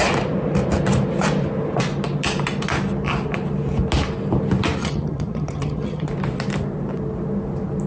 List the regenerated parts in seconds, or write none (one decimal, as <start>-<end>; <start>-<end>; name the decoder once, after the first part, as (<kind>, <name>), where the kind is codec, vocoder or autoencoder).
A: 4.8-6.1 (vocoder, HiFi-GAN)